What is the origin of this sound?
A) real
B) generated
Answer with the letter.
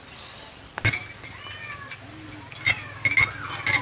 A